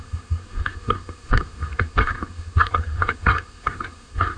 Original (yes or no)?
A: no